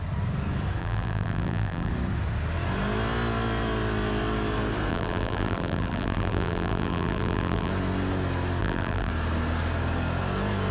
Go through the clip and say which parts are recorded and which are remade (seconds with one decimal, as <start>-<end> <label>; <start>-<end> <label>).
0.0-0.8 recorded; 0.8-1.9 remade; 1.9-4.9 recorded; 4.9-7.7 remade; 7.7-8.6 recorded; 8.6-9.1 remade; 9.1-10.7 recorded